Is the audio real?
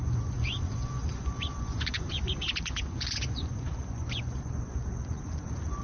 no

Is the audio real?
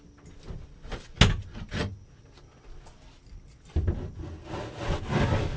yes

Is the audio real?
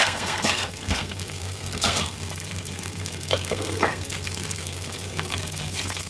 no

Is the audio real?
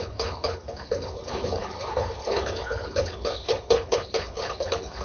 no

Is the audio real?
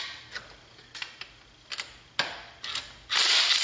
yes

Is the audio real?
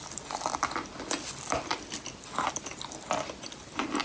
yes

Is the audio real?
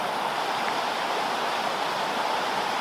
yes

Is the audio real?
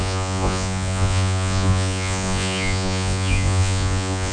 no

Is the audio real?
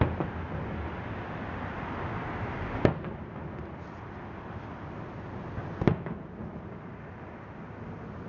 yes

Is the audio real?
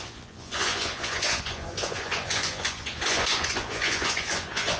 no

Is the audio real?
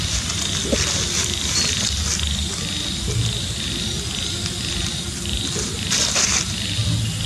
yes